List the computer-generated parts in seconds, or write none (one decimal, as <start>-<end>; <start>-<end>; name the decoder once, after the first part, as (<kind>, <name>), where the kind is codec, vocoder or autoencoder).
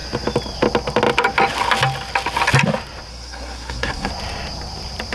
3.1-4.1 (codec, SNAC)